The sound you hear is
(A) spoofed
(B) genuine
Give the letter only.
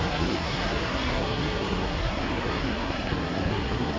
A